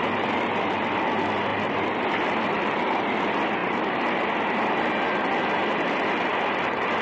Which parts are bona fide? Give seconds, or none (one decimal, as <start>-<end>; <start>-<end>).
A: 0.0-6.3